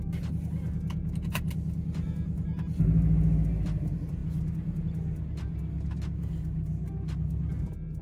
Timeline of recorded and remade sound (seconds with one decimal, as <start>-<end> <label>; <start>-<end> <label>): 0.0-8.0 recorded